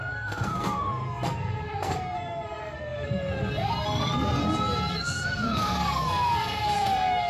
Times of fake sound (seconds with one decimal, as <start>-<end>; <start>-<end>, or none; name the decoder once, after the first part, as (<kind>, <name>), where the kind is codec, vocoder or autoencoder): 0.0-4.4 (codec, SNAC); 4.9-7.3